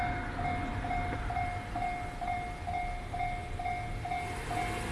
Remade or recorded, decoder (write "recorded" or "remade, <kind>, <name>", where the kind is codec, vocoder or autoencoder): recorded